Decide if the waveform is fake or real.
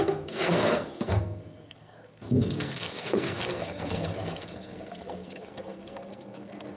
fake